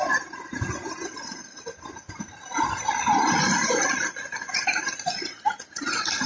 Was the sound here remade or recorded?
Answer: recorded